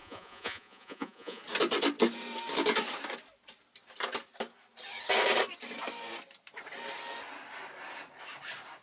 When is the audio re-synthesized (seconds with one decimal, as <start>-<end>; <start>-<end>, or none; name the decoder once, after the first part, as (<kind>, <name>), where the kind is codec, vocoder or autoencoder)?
0.0-1.4 (vocoder, Vocos)